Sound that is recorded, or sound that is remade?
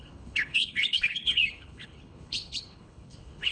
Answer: remade